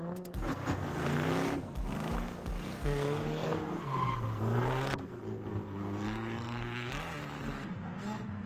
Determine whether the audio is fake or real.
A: fake